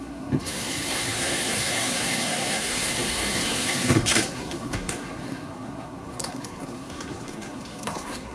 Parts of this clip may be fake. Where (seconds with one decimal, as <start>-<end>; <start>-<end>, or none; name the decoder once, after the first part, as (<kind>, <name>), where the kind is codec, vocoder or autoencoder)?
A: 0.0-8.3 (codec, SNAC)